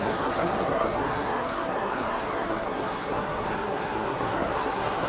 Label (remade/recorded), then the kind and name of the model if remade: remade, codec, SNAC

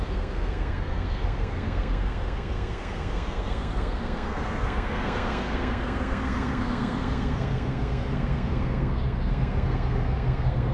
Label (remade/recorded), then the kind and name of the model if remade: remade, codec, SNAC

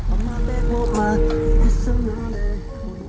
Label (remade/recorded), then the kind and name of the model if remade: recorded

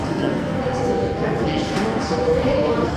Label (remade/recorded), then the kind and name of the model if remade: remade, codec, SNAC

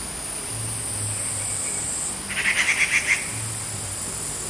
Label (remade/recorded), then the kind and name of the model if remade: recorded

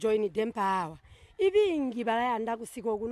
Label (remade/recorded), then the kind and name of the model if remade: recorded